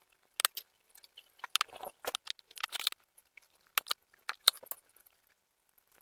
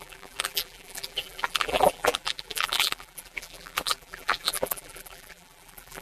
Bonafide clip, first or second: first